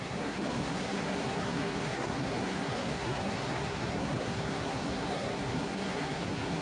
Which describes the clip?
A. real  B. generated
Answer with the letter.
B